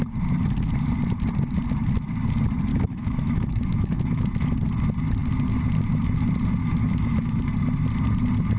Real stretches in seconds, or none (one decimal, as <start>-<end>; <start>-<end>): 0.0-2.7; 4.3-6.6; 7.4-8.6